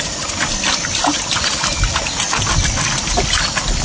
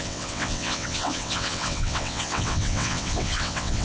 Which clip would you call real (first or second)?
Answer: first